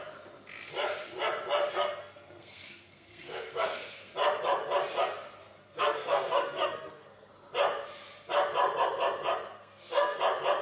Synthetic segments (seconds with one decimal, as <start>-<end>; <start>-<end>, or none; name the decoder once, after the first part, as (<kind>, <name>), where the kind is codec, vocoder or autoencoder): 1.7-4.1 (codec, SNAC); 5.4-7.3; 9.5-10.2